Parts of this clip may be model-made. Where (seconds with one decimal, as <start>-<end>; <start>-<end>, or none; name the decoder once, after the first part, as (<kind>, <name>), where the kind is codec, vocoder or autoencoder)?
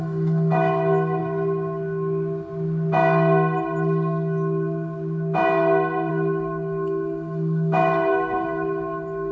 0.0-1.2 (autoencoder, DAC-VAE); 6.1-9.3